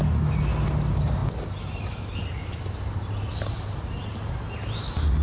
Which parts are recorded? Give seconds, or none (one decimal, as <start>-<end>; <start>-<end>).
0.0-5.2